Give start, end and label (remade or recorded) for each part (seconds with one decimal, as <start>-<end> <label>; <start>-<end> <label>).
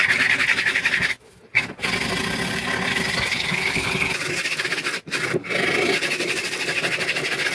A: 0.0-3.3 recorded; 3.3-3.9 remade; 3.9-7.5 recorded